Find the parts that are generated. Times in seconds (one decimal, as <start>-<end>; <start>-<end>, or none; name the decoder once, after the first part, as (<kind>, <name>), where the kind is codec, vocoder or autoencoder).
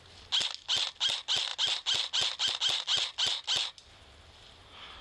none